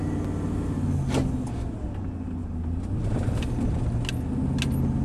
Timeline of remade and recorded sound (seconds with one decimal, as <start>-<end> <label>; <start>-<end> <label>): 0.0-5.0 recorded